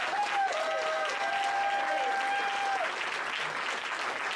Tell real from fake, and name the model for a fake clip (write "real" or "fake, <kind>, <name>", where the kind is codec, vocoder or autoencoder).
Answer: real